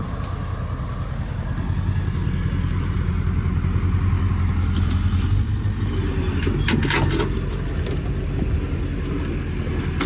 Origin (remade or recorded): recorded